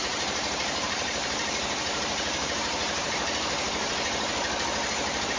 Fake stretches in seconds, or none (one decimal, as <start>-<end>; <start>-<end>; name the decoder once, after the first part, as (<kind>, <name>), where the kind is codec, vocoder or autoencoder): 0.0-3.1 (vocoder, BigVGAN v2)

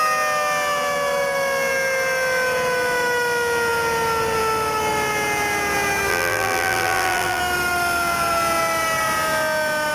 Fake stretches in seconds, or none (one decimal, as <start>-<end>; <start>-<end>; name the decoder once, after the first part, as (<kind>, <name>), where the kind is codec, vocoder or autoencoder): 6.1-7.4 (vocoder, BigVGAN v2)

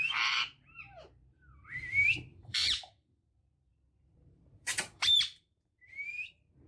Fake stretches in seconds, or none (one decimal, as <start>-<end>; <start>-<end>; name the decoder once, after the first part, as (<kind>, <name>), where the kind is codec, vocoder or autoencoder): 0.0-6.7 (vocoder, BigVGAN v2)

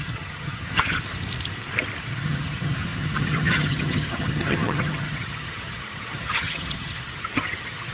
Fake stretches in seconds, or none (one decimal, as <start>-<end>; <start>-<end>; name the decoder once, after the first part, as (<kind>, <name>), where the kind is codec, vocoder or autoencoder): 0.0-1.0 (vocoder, HiFi-GAN); 2.0-7.9

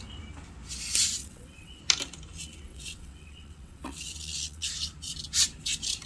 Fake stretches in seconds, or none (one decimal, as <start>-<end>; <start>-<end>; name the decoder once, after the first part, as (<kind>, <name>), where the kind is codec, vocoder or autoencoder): 1.2-1.8 (vocoder, WaveNeXt); 2.4-4.7

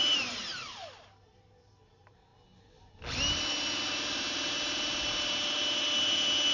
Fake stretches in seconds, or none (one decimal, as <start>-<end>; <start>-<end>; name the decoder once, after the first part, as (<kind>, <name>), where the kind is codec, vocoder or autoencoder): 0.0-2.3 (vocoder, BigVGAN v2); 3.3-6.5